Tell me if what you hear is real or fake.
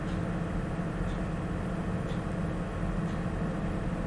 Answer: real